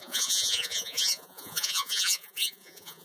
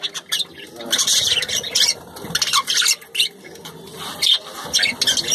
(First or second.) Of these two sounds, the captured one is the second